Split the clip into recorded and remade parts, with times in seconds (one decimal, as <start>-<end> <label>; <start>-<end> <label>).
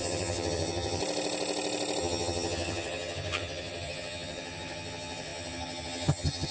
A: 0.0-1.0 remade; 1.0-2.0 recorded; 2.0-6.5 remade